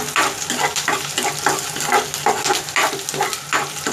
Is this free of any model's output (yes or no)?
yes